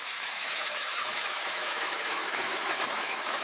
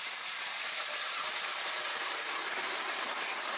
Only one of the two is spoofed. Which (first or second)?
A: first